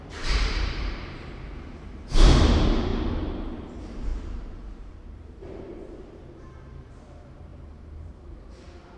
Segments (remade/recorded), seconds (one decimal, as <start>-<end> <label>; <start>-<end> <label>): 0.0-9.0 remade